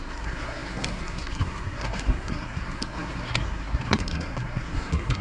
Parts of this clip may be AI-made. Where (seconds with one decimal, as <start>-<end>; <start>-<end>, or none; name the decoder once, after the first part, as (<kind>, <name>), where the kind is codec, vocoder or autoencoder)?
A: 0.0-5.2 (codec, SNAC)